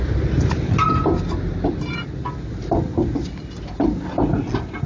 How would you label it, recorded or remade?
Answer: recorded